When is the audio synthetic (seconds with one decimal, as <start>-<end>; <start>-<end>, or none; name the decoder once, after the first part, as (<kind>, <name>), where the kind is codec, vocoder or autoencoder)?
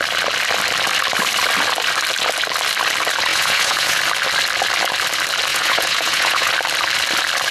3.3-4.0 (vocoder, Vocos); 5.5-6.5